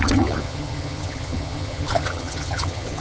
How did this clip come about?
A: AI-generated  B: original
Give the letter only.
A